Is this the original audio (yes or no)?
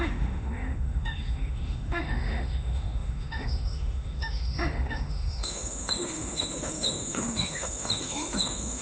no